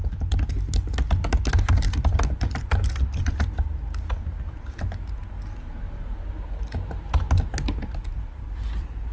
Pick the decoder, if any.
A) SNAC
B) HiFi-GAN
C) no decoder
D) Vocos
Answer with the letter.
C